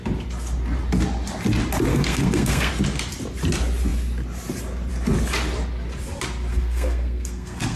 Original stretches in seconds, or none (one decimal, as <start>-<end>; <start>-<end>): 0.0-1.9; 2.7-6.5